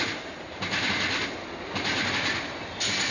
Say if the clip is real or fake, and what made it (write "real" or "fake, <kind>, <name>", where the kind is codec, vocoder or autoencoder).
real